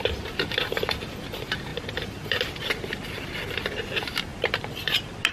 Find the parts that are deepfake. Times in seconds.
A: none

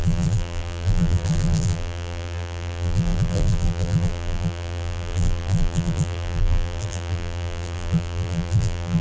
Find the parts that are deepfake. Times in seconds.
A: 0.0-9.0 (vocoder, BigVGAN v2)

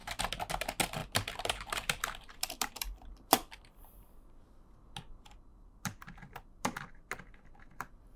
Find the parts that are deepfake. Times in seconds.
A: 1.0-4.7 (vocoder, BigVGAN v2); 5.5-6.8